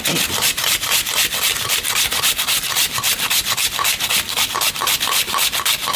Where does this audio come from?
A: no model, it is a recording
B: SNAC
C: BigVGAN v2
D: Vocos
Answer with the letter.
A